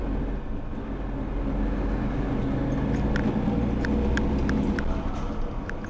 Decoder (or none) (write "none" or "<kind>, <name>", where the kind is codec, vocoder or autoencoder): none